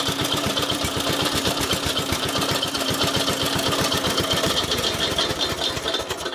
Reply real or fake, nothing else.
real